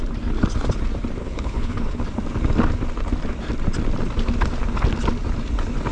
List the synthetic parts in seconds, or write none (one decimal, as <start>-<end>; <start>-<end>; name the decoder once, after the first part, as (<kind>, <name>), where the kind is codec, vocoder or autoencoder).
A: 1.2-2.0 (codec, HILCodec)